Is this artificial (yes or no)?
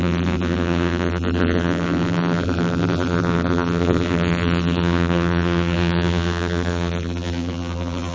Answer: yes